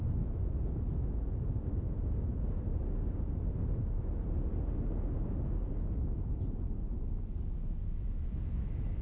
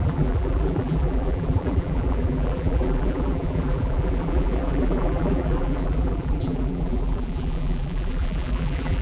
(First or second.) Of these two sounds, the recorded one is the first